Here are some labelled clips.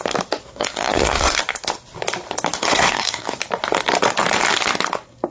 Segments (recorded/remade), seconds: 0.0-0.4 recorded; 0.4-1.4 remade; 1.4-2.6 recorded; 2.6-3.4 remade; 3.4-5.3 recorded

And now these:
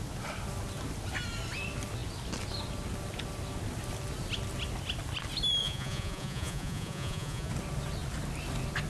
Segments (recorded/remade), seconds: 0.0-5.6 recorded; 5.6-7.5 remade; 7.5-8.9 recorded

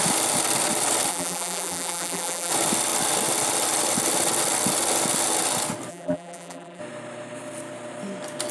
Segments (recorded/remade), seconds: 0.0-1.1 recorded; 1.1-2.5 remade; 2.5-5.9 recorded; 5.9-6.8 remade; 6.8-8.5 recorded

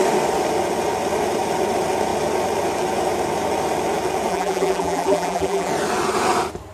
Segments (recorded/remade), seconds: 0.0-4.3 recorded; 4.3-5.7 remade; 5.7-6.7 recorded

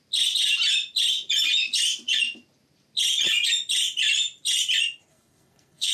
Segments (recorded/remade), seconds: 0.0-5.1 recorded; 5.1-5.9 remade

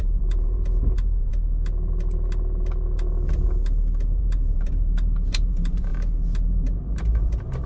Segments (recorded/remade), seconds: 0.0-1.3 remade; 1.3-4.2 recorded; 4.2-5.9 remade; 5.9-6.5 recorded; 6.5-7.7 remade

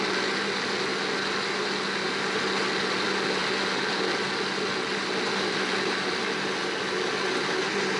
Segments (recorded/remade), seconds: 0.0-8.0 recorded

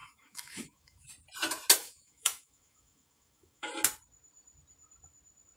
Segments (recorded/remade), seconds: 0.0-1.1 remade; 1.1-1.8 recorded; 1.8-3.7 remade; 3.7-5.6 recorded